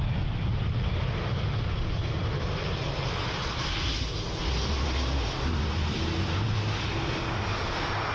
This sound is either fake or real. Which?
real